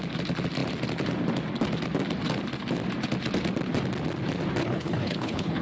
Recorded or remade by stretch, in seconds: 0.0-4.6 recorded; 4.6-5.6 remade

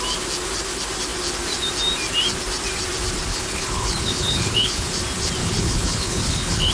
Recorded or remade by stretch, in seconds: 0.0-3.3 recorded; 3.3-4.9 remade; 4.9-5.4 recorded; 5.4-6.7 remade

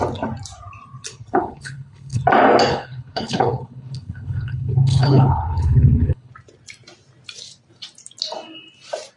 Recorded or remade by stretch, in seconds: 0.0-1.1 recorded; 1.1-2.2 remade; 2.2-2.7 recorded; 2.7-6.3 remade; 6.3-9.2 recorded

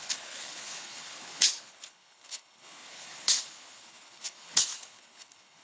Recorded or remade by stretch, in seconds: 0.0-5.6 remade